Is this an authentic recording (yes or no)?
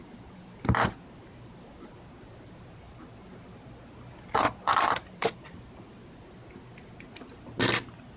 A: yes